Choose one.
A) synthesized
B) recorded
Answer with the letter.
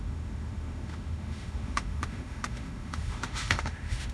A